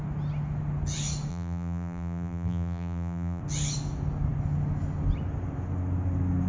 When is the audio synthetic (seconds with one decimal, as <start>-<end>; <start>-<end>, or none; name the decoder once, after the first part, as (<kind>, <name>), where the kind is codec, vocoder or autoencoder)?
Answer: 1.3-3.4 (vocoder, BigVGAN v2)